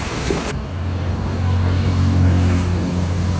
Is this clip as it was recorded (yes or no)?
no